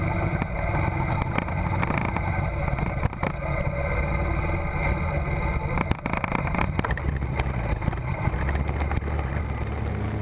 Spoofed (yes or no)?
no